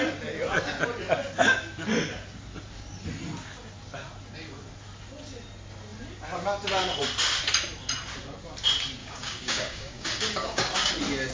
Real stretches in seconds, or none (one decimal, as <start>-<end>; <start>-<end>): 0.0-9.0; 10.9-11.3